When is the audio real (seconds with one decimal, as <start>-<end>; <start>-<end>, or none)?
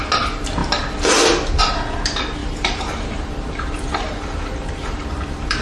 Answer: 0.0-2.4